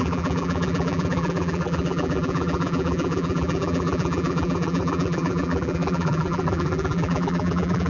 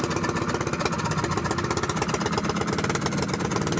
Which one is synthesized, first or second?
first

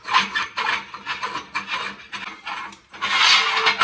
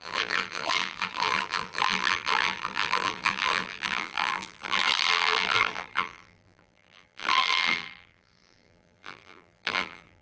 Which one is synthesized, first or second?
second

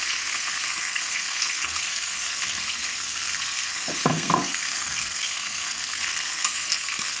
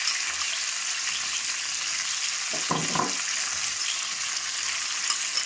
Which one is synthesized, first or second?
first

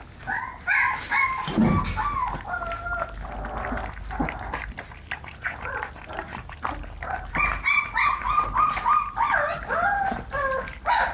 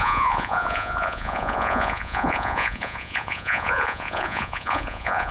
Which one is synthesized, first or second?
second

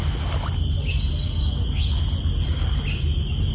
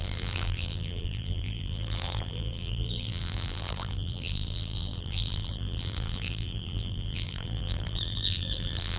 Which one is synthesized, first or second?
second